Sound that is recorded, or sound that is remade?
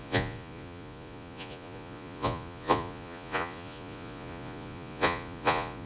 remade